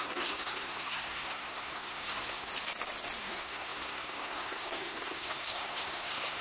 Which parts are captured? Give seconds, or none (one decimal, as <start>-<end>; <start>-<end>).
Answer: 2.5-3.2